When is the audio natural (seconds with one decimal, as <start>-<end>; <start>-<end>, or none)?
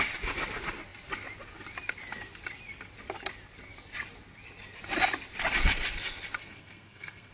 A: 0.0-6.4